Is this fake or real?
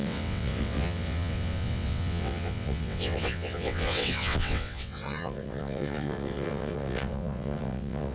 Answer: fake